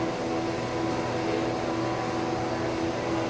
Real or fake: real